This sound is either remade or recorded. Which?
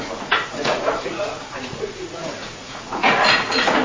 remade